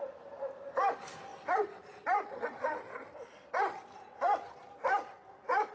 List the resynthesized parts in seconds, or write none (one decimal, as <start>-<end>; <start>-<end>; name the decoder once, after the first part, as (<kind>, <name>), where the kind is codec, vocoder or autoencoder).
1.3-4.7 (vocoder, BigVGAN v2)